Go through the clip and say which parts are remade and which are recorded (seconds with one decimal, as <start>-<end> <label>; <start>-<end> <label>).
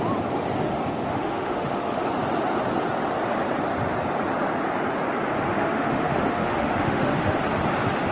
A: 0.0-1.1 recorded; 1.1-2.0 remade; 2.0-5.5 recorded; 5.5-7.4 remade; 7.4-8.1 recorded